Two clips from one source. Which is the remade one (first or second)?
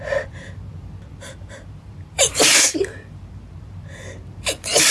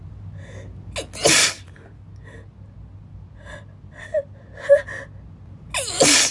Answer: first